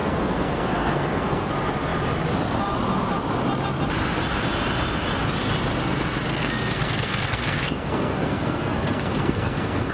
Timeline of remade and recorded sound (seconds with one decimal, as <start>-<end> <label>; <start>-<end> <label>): 0.0-1.5 remade; 1.5-6.3 recorded; 6.3-9.9 remade